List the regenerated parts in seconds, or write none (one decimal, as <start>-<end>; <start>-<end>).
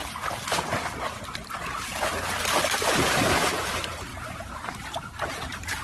4.1-5.8